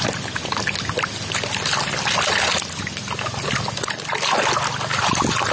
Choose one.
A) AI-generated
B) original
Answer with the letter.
B